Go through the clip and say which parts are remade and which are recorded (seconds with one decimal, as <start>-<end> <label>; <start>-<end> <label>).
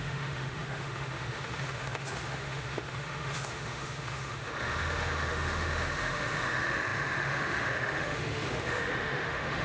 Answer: 0.0-9.6 remade